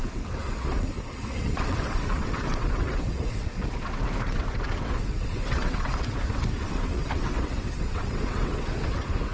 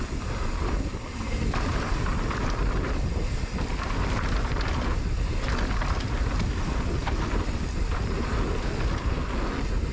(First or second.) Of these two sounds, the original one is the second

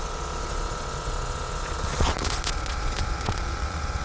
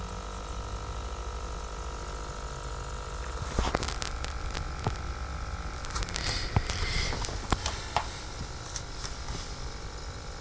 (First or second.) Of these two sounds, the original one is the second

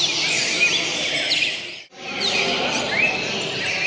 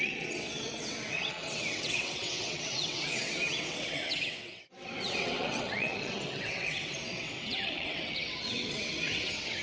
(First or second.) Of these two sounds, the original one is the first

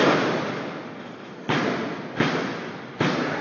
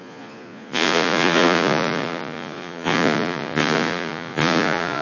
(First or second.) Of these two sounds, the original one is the first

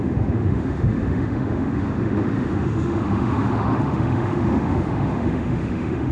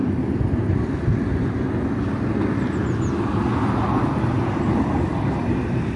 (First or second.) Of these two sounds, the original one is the second